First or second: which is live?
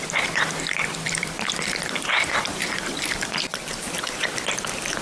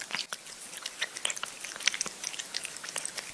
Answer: second